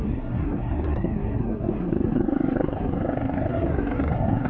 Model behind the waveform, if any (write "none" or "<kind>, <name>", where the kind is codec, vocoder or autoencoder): codec, SNAC